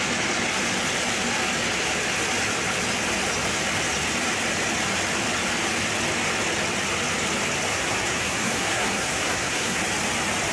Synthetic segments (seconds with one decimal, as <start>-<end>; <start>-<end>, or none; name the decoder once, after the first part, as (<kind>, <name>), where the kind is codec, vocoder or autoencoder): 7.7-9.8 (codec, SNAC)